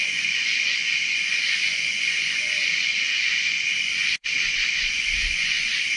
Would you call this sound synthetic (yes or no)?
yes